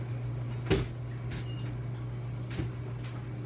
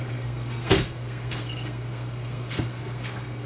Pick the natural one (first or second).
first